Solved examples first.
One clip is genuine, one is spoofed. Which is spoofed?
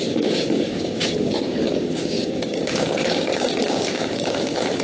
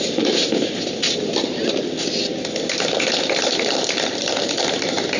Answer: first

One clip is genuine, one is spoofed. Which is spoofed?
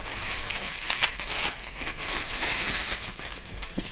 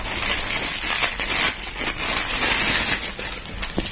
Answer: first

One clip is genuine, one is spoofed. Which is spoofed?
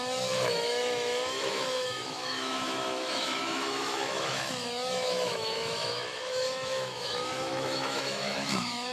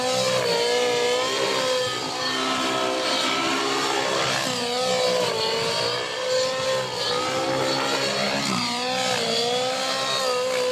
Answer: first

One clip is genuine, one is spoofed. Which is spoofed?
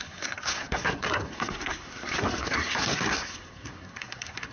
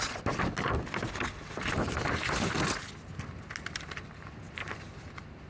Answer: first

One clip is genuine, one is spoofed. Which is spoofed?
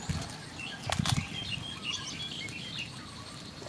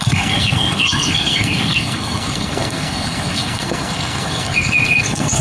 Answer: second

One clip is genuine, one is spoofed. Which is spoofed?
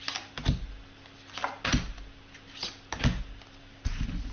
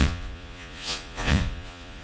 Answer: second